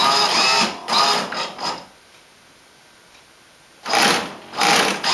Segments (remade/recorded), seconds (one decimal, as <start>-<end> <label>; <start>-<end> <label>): 0.0-5.1 recorded